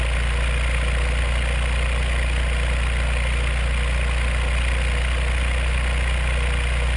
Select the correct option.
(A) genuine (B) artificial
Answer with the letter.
A